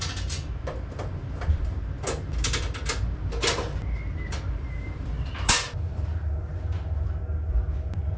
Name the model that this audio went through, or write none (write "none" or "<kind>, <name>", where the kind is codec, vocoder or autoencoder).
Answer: none